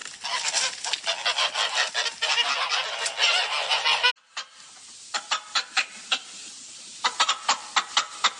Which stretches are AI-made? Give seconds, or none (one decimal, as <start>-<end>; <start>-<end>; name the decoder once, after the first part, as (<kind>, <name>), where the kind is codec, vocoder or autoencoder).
none